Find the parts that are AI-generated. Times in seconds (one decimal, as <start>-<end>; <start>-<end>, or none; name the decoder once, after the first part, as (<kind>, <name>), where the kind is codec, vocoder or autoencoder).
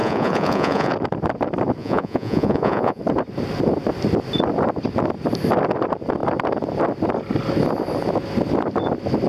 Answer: 0.0-0.9 (vocoder, Vocos); 1.8-3.0